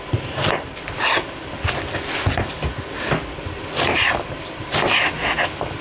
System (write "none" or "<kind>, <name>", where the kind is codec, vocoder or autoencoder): none